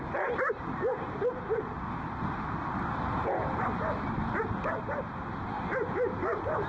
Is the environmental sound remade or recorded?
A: recorded